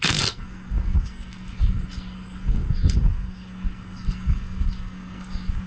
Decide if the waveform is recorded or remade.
remade